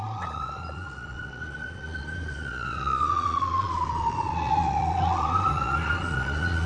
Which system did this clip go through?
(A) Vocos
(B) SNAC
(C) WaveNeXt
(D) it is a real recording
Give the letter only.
A